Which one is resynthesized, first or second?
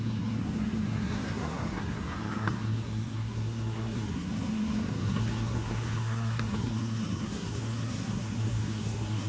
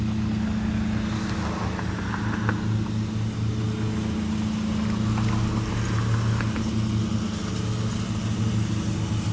first